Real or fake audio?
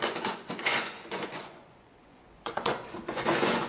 fake